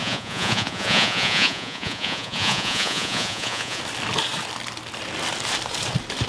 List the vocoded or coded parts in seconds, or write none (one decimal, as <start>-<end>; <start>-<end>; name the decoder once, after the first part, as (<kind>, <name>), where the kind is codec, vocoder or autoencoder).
0.0-3.8 (vocoder, Vocos)